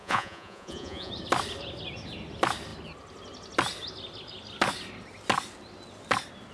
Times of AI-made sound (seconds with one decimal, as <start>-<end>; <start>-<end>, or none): 0.0-1.1